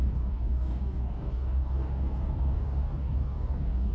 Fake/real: fake